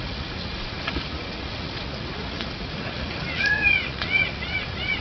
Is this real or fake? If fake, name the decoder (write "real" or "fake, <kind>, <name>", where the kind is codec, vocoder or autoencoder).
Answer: fake, vocoder, Vocos